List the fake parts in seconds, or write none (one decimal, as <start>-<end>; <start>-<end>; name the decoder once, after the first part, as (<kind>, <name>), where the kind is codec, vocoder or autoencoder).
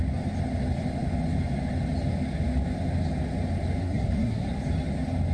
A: 3.8-4.5 (codec, SNAC)